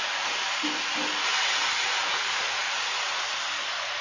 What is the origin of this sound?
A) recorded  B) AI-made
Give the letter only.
A